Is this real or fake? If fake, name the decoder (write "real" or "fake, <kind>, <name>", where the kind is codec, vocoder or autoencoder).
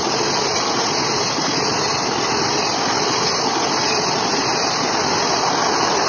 real